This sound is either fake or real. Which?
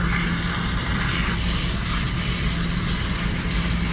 real